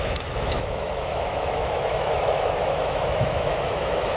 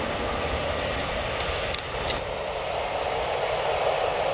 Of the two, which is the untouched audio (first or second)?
second